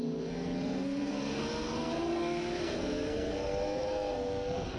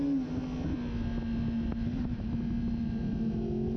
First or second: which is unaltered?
second